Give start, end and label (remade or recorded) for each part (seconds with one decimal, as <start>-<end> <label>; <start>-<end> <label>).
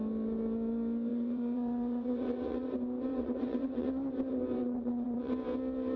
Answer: 0.0-1.1 recorded; 1.1-2.7 remade; 2.7-3.1 recorded; 3.1-3.9 remade; 3.9-4.6 recorded; 4.6-5.3 remade; 5.3-6.0 recorded